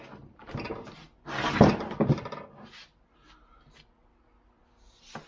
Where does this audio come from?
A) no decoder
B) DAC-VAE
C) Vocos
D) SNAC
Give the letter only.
A